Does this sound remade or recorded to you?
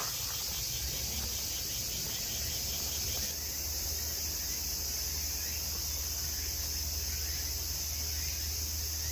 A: recorded